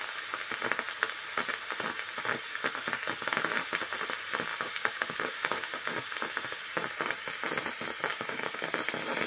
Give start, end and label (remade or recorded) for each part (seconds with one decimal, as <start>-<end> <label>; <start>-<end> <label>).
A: 0.0-4.5 recorded; 4.5-5.9 remade; 5.9-8.1 recorded; 8.1-8.7 remade; 8.7-9.3 recorded

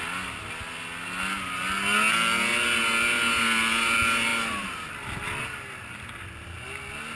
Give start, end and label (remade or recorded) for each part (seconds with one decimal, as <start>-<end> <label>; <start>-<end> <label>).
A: 0.0-7.2 recorded

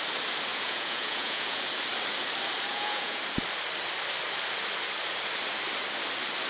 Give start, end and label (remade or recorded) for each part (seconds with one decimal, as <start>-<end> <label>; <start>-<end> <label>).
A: 0.0-0.5 recorded; 0.5-1.6 remade; 1.6-2.7 recorded; 2.7-3.2 remade; 3.2-6.5 recorded

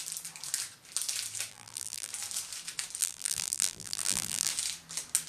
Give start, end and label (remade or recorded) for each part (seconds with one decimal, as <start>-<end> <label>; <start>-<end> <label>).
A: 0.0-1.5 recorded; 1.5-2.1 remade; 2.1-3.0 recorded; 3.0-4.5 remade; 4.5-5.3 recorded

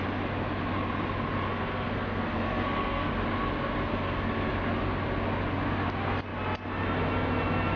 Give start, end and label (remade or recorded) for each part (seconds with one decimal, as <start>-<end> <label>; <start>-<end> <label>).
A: 0.0-1.5 recorded; 1.5-3.1 remade; 3.1-3.9 recorded; 3.9-4.5 remade; 4.5-7.8 recorded

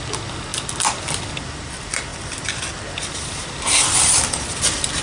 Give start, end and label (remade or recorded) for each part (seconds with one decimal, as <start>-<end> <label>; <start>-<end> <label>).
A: 0.0-2.1 recorded; 2.1-3.5 remade; 3.5-5.0 recorded

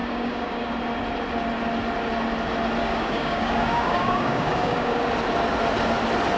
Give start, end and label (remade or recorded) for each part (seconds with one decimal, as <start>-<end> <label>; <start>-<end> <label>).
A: 0.0-0.7 remade; 0.7-2.8 recorded; 2.8-5.0 remade; 5.0-6.4 recorded